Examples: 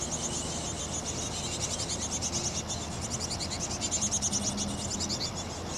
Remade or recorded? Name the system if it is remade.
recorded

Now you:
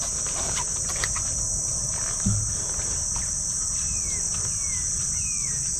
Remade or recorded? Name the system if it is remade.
recorded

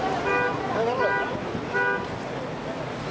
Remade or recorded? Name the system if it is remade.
recorded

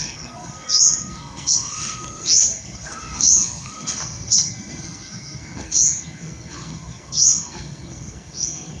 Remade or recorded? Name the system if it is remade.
remade, codec, SNAC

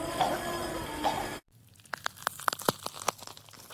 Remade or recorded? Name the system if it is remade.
recorded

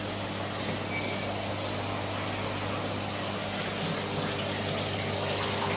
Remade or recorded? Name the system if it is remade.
recorded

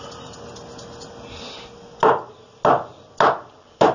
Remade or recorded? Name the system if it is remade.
recorded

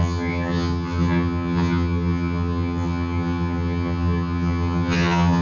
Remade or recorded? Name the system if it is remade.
remade, vocoder, HiFi-GAN